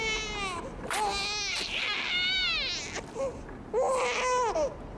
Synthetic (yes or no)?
no